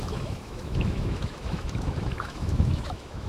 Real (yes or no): no